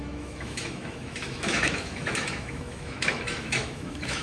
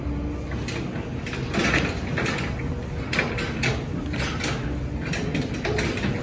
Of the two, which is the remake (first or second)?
first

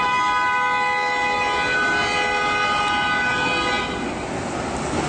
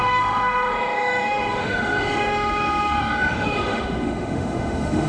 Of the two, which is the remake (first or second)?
second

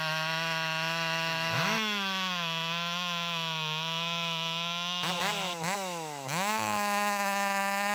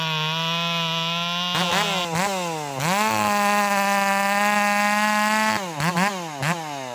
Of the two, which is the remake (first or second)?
first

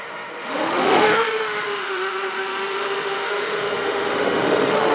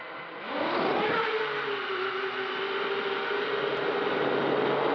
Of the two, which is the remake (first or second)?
first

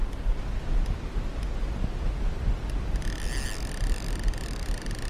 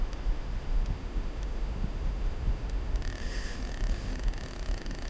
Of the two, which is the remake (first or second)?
second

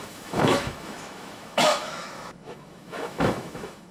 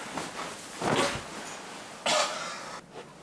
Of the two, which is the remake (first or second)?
first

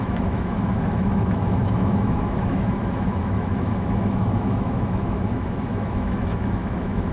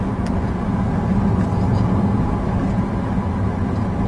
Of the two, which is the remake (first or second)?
first